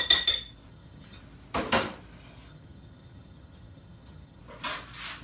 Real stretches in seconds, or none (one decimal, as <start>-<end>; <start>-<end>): 0.0-0.7; 1.2-2.5; 4.4-5.2